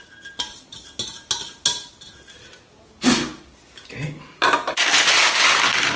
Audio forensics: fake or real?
real